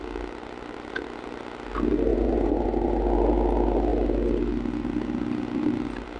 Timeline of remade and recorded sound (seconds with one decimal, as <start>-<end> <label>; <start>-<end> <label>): 0.0-2.1 recorded; 2.1-3.0 remade; 3.0-6.2 recorded